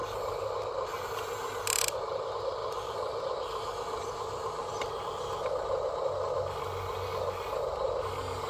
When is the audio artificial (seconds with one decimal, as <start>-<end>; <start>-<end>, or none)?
none